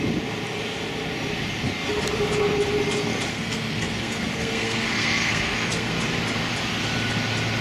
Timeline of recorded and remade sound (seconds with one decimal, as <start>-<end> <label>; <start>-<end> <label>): 0.0-3.3 recorded; 3.3-5.9 remade; 5.9-7.6 recorded